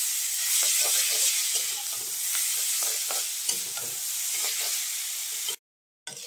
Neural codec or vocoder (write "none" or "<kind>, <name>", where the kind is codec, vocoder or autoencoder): none